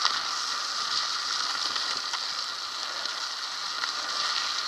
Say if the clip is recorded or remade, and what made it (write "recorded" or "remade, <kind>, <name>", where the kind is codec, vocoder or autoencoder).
recorded